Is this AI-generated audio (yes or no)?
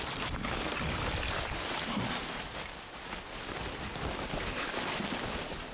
no